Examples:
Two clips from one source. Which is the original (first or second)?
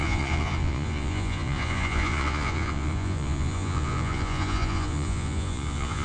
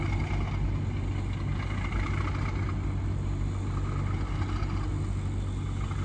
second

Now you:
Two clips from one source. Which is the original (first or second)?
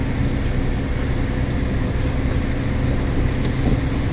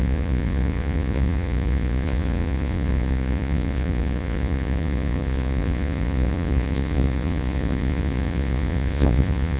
first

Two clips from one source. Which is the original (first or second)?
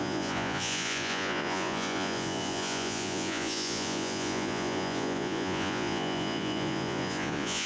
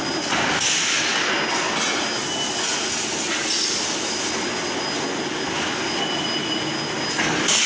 second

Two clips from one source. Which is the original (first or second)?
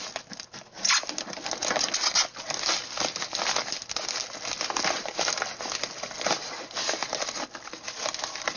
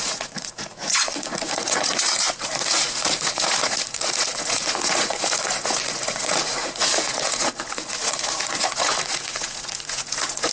first